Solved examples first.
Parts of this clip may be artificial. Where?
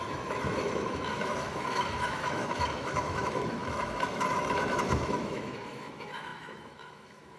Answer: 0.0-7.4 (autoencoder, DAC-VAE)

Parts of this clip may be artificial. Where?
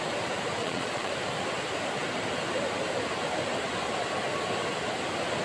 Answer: 0.6-1.1 (vocoder, Vocos)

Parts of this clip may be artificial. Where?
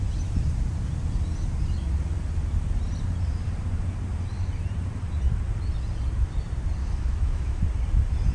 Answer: 6.8-7.6 (autoencoder, DAC-VAE)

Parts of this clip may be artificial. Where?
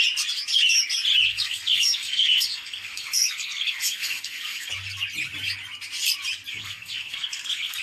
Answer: 1.3-4.7 (codec, SNAC); 6.5-7.8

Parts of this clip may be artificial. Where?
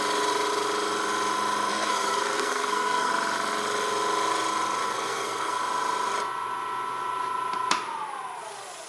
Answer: 1.7-3.1 (codec, SNAC); 4.8-5.6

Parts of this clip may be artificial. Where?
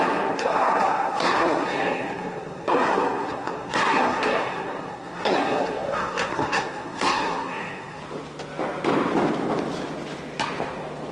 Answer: 0.0-8.0 (codec, SNAC)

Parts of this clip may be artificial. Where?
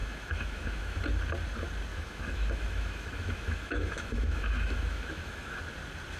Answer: 0.0-1.0 (autoencoder, DAC-VAE); 1.9-5.6